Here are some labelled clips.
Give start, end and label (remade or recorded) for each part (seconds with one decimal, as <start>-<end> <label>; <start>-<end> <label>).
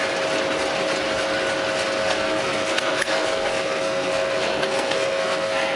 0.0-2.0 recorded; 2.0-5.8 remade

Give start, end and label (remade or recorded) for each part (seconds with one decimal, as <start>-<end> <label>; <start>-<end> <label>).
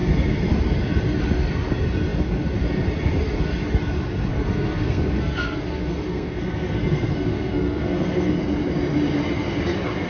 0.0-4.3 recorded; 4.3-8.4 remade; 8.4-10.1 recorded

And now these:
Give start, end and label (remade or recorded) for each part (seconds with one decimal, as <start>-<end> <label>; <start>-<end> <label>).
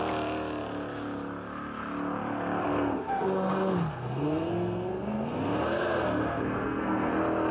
0.0-2.6 recorded; 2.6-7.1 remade; 7.1-7.5 recorded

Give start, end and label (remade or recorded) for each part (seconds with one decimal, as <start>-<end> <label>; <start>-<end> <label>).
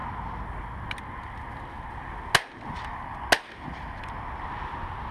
0.0-5.1 recorded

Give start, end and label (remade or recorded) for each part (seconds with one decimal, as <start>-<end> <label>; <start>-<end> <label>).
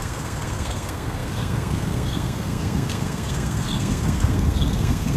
0.0-5.2 remade